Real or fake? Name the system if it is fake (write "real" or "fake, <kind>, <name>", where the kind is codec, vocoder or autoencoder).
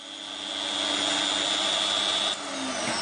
real